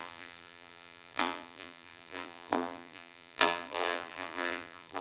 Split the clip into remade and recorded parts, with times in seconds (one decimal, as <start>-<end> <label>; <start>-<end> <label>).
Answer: 0.0-5.0 remade